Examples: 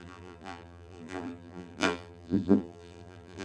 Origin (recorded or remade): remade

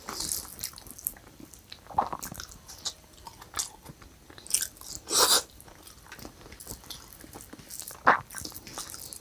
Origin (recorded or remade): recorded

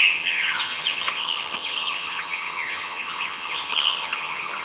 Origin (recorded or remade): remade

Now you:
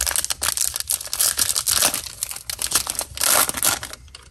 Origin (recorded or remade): recorded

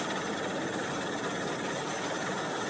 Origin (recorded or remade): recorded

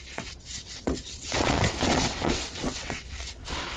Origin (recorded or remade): remade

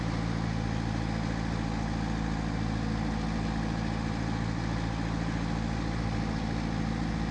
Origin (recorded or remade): recorded